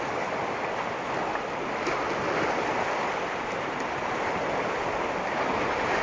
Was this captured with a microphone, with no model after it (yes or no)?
yes